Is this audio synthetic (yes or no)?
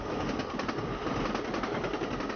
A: no